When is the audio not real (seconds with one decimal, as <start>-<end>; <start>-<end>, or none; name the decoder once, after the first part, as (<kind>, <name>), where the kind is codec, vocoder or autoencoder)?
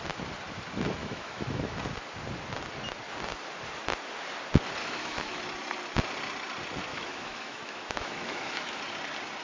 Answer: 1.0-1.8 (autoencoder, DAC-VAE); 4.8-5.4; 6.9-8.8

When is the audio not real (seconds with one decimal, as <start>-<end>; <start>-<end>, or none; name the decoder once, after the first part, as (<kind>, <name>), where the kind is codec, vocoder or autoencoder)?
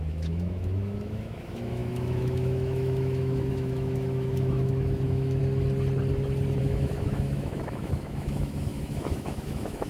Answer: 0.0-5.4 (autoencoder, DAC-VAE); 6.6-9.9